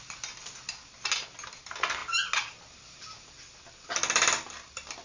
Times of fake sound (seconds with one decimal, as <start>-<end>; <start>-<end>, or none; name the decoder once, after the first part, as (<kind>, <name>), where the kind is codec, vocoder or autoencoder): none